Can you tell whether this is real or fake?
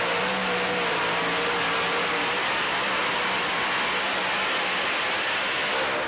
real